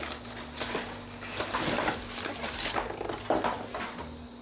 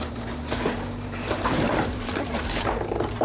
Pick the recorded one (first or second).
first